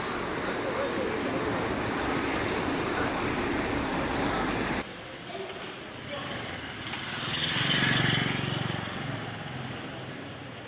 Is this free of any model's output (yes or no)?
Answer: yes